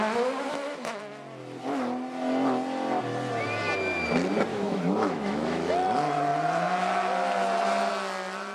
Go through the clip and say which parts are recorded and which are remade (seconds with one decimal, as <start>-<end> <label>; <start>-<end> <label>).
0.0-0.5 recorded; 0.5-1.0 remade; 1.0-4.5 recorded; 4.5-5.7 remade; 5.7-8.5 recorded